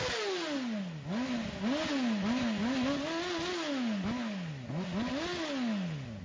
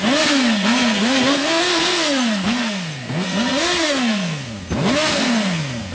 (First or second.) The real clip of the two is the first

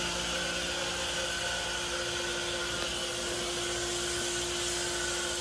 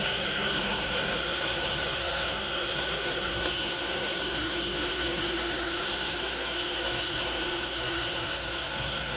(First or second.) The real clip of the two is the first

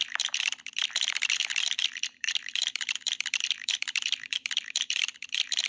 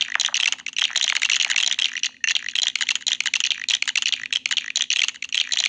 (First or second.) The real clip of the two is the second